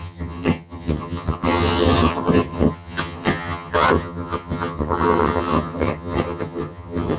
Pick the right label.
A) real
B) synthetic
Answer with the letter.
B